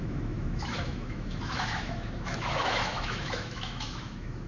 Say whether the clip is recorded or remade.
remade